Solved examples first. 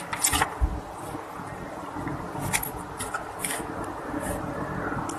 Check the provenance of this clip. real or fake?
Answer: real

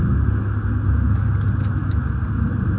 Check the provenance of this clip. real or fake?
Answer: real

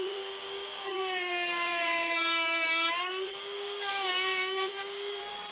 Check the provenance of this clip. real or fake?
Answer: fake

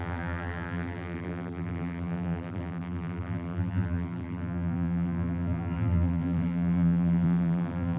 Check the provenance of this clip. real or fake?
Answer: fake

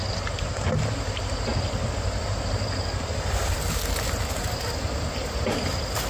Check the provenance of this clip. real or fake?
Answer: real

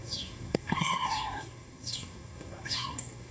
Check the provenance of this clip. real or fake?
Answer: fake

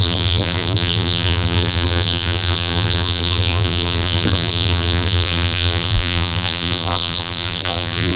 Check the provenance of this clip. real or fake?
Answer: fake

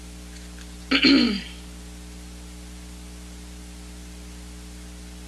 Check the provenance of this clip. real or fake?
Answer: real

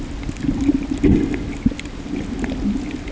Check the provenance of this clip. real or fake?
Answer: real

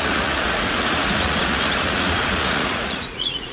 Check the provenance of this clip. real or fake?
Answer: fake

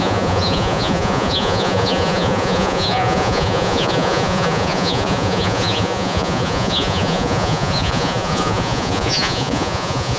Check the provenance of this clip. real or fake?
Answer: fake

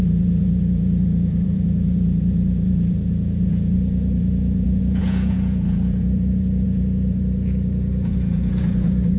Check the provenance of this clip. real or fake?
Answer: fake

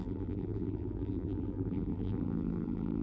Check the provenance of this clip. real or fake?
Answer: fake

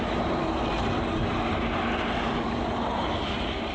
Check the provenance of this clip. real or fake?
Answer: real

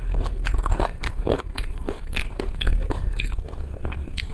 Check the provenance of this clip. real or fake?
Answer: fake